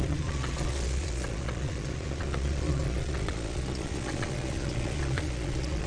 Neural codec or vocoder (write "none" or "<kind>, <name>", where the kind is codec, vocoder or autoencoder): vocoder, Vocos